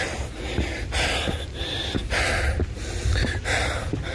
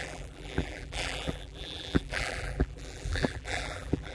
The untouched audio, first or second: first